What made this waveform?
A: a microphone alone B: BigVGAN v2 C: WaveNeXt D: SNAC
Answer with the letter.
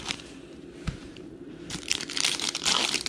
B